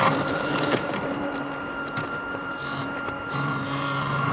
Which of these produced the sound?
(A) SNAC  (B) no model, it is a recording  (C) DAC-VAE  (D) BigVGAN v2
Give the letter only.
D